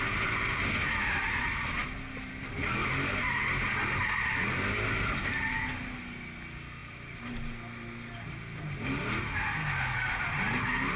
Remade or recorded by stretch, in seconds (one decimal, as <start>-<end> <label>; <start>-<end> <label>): 0.0-9.6 recorded; 9.6-10.1 remade; 10.1-11.0 recorded

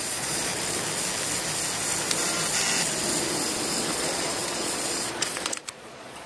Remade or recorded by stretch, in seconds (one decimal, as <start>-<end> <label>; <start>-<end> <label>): 0.0-0.5 remade; 0.5-3.9 recorded; 3.9-6.3 remade

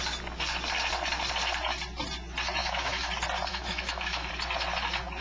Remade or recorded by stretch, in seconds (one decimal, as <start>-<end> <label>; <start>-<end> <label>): 0.0-2.6 recorded; 2.6-3.1 remade; 3.1-3.5 recorded; 3.5-4.3 remade; 4.3-5.2 recorded

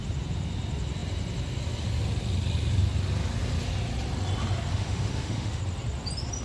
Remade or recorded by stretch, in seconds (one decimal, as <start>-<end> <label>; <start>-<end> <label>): 0.0-4.7 recorded; 4.7-5.6 remade; 5.6-6.4 recorded

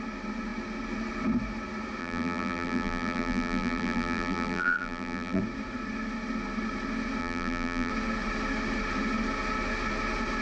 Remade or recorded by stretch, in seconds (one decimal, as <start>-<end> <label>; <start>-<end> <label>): 0.0-2.0 recorded; 2.0-5.4 remade; 5.4-7.2 recorded; 7.2-7.9 remade; 7.9-10.4 recorded